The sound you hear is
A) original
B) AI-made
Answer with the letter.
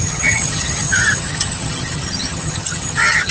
B